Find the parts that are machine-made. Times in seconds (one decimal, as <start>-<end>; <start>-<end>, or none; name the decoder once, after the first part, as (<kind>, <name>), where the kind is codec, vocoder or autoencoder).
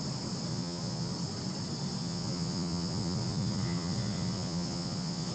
0.5-1.1 (vocoder, Vocos); 2.0-5.3